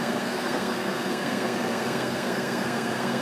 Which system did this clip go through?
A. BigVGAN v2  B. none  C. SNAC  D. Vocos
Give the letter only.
C